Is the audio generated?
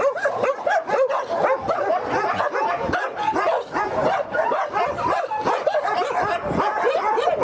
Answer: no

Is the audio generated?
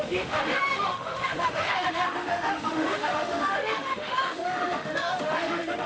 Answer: yes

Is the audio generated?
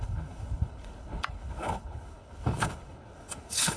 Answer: yes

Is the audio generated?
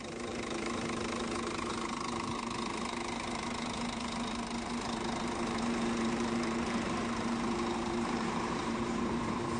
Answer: yes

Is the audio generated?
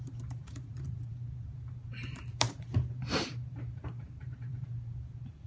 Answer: yes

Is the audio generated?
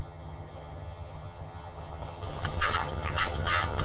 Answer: yes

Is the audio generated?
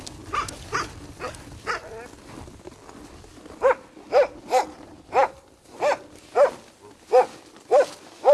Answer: no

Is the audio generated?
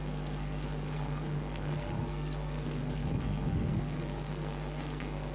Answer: yes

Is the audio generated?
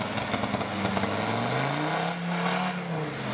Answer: no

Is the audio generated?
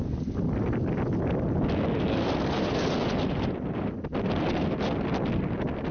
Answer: no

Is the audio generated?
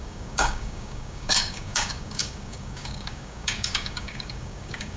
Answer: yes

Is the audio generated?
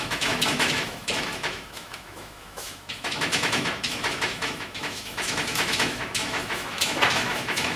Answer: yes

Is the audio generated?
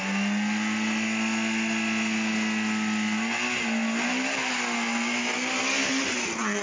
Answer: no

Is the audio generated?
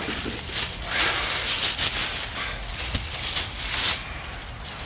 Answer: no